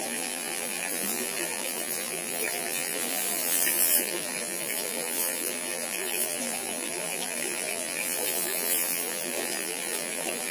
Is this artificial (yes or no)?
yes